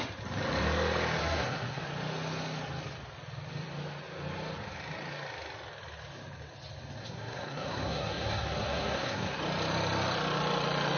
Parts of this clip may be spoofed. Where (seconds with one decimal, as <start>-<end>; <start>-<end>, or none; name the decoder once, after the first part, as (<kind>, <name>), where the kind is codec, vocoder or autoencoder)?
1.2-1.8 (codec, SNAC); 7.0-9.4